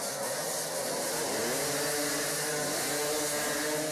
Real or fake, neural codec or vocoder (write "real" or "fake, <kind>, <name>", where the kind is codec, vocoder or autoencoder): real